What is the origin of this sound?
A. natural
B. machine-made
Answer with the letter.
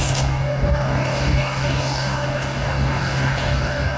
B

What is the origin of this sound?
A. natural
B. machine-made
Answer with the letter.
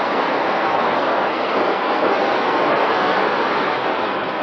B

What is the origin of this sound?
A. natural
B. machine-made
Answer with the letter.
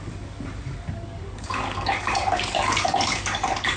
B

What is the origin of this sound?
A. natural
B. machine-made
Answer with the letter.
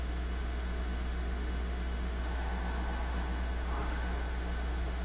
B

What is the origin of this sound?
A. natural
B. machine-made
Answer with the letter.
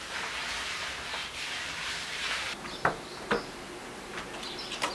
B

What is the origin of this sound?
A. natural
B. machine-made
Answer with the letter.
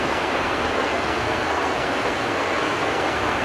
B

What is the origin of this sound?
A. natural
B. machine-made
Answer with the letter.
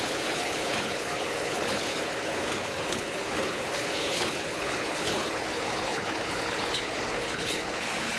B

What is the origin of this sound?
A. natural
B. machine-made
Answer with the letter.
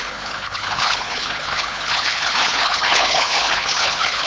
B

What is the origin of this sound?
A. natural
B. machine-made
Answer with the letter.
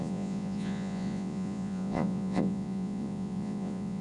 B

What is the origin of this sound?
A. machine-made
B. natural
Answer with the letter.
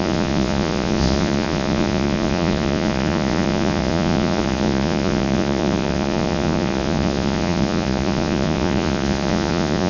A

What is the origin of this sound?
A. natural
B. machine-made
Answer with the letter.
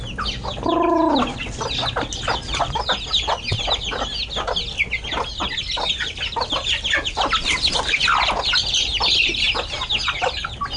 A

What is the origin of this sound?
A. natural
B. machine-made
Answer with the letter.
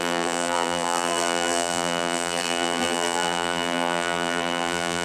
B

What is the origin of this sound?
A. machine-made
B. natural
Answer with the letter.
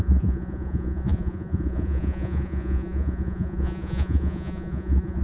A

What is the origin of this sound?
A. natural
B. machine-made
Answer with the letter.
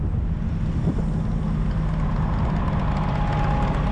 A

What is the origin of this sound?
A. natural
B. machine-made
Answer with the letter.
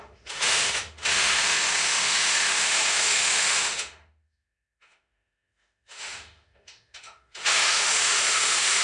B